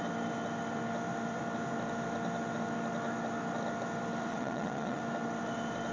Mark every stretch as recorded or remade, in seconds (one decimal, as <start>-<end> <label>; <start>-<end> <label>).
0.0-4.3 recorded; 4.3-5.0 remade; 5.0-5.9 recorded